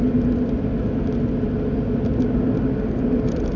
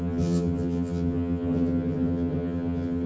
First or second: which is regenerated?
second